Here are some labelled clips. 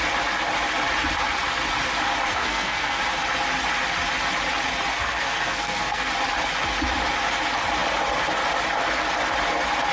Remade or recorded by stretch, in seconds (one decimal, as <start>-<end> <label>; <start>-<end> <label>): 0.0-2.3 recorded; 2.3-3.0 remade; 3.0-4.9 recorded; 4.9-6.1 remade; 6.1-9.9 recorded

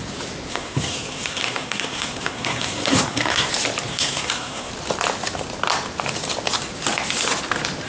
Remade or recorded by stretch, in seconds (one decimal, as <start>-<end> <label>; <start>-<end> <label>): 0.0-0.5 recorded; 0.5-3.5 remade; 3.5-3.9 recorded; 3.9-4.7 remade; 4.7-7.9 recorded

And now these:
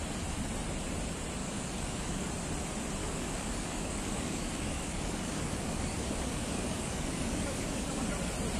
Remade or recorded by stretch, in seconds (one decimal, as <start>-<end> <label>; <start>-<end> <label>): 0.0-1.4 recorded; 1.4-2.3 remade; 2.3-3.0 recorded; 3.0-8.0 remade; 8.0-8.6 recorded

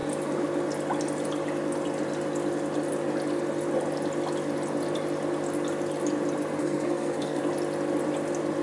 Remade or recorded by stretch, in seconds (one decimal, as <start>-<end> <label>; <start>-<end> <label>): 0.0-6.6 recorded; 6.6-7.4 remade; 7.4-8.6 recorded